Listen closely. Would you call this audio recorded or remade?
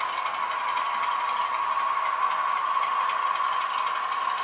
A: recorded